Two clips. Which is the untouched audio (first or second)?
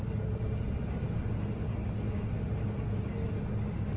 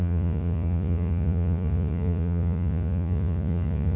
first